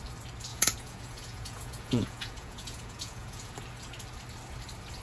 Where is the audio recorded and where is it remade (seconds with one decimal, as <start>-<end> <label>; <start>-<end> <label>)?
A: 0.0-0.5 recorded; 0.5-3.5 remade; 3.5-5.0 recorded